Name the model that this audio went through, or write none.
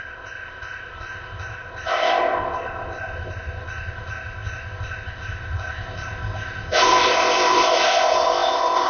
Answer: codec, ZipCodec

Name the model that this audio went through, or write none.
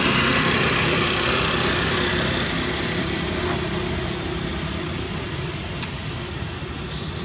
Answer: none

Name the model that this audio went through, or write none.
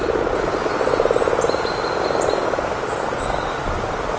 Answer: none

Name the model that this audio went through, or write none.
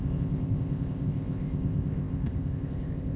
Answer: codec, ZipCodec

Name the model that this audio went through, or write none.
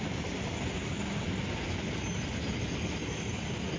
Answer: none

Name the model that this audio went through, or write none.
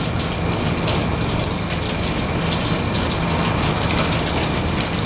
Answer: none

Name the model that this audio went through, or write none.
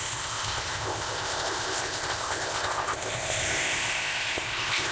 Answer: codec, ZipCodec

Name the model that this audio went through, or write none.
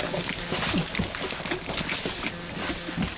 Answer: none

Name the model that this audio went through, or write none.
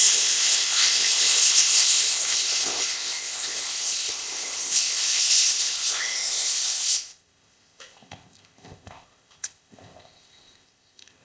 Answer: codec, ZipCodec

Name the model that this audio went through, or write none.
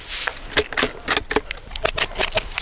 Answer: none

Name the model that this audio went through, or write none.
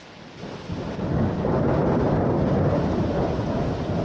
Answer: none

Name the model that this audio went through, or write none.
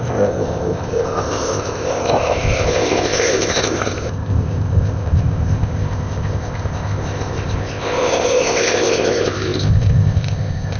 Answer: codec, ZipCodec